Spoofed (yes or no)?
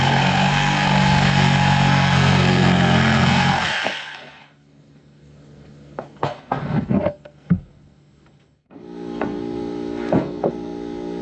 yes